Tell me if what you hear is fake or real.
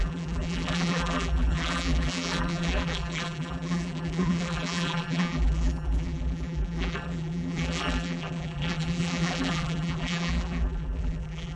fake